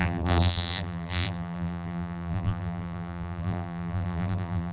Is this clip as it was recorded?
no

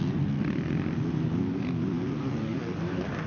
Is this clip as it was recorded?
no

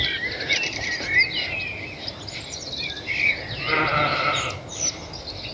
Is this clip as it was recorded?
yes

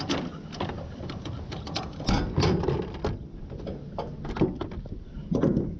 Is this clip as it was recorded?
yes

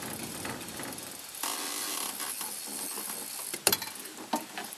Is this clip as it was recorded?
yes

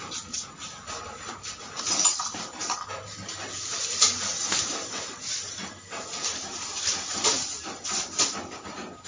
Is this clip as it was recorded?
no